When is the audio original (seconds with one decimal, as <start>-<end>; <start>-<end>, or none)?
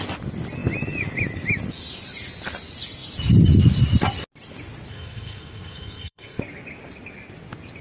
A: 0.0-4.9; 6.4-7.8